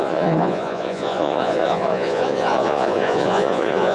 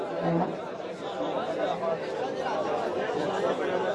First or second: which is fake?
first